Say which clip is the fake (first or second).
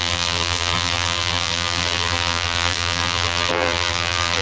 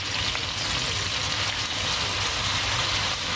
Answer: first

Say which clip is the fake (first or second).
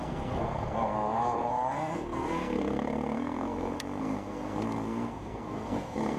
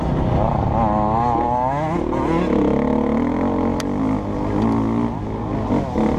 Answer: first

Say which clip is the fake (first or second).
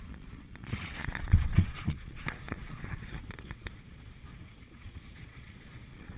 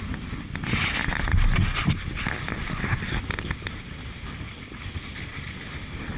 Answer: first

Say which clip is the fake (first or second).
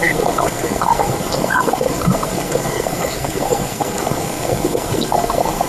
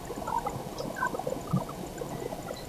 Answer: first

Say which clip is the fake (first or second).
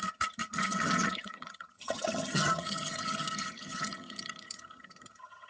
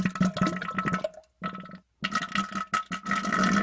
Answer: first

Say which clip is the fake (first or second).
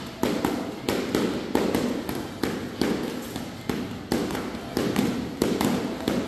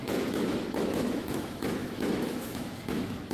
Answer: second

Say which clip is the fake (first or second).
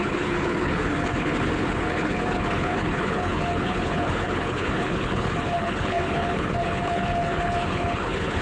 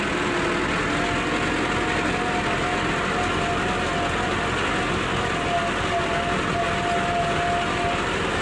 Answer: first